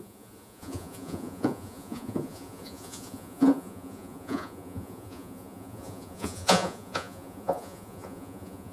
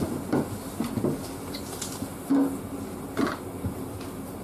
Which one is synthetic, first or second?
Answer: first